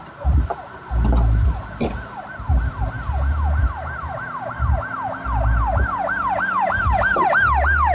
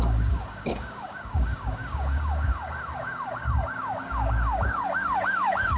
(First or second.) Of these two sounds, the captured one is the first